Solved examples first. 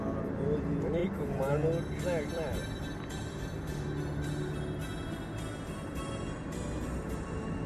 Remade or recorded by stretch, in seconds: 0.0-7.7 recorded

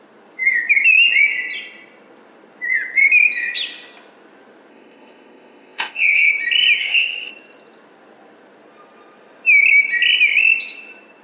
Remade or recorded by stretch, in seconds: 0.0-4.7 recorded; 4.7-6.3 remade; 6.3-6.8 recorded; 6.8-7.3 remade; 7.3-11.2 recorded

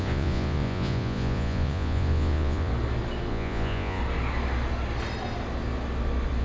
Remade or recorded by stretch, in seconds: 0.0-2.7 remade; 2.7-3.3 recorded; 3.3-4.0 remade; 4.0-6.4 recorded

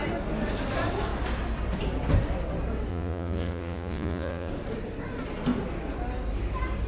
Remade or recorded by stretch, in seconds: 0.0-2.9 recorded; 2.9-4.5 remade; 4.5-6.9 recorded

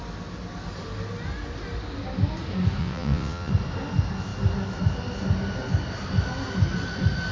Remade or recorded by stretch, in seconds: 0.0-2.8 recorded; 2.8-3.5 remade; 3.5-7.3 recorded

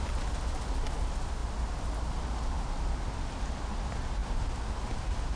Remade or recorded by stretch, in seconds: 0.0-5.4 recorded